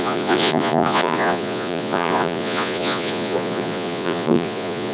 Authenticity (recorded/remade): remade